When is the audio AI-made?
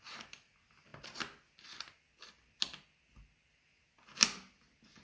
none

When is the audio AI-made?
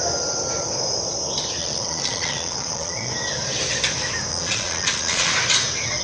1.6-3.1; 4.3-5.3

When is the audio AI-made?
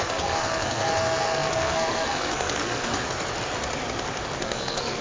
0.0-2.9; 4.4-5.0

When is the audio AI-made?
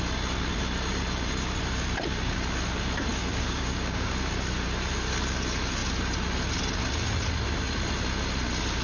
3.2-4.1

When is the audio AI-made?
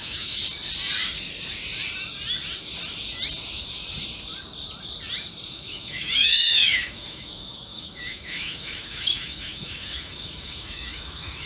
0.0-0.4; 5.5-11.5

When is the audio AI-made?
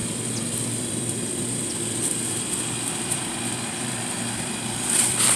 0.0-5.4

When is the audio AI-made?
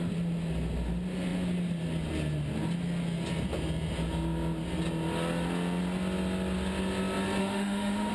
7.4-8.1